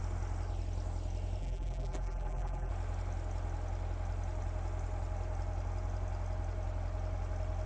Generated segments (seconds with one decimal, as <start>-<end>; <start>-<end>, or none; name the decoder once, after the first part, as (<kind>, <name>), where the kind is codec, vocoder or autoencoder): 1.4-2.7 (vocoder, BigVGAN v2)